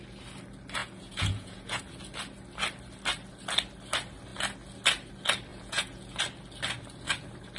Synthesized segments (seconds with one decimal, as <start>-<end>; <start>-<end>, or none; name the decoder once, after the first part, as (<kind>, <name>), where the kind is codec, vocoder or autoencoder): 0.8-1.8 (vocoder, Vocos); 5.5-6.2